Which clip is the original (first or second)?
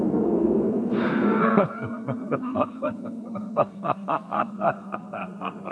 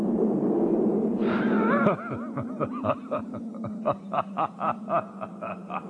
second